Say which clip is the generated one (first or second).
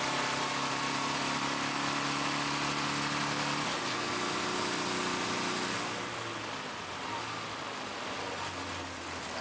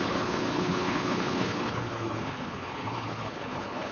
second